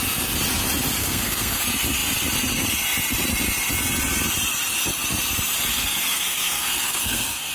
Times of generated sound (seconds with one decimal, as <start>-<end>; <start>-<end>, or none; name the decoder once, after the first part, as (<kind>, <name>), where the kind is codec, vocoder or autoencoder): 1.0-1.6 (codec, SNAC); 5.7-7.5